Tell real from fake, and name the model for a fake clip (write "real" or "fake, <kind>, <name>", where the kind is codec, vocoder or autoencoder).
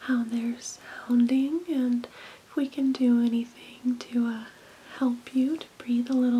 real